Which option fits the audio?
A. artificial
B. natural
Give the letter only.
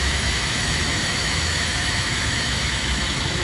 A